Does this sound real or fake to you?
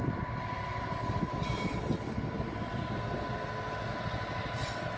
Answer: real